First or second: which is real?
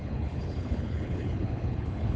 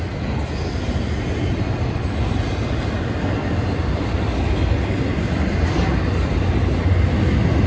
second